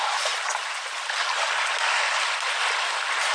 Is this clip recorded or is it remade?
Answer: recorded